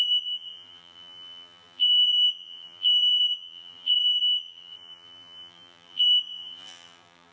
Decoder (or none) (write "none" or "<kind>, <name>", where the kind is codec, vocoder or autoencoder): vocoder, BigVGAN v2